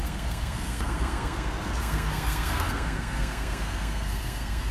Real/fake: fake